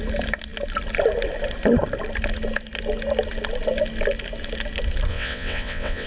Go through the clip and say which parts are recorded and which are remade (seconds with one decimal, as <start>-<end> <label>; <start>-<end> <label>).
0.0-5.1 recorded; 5.1-6.1 remade